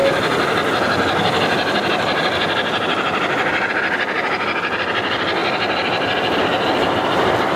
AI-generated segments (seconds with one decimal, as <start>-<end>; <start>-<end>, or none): 0.0-3.7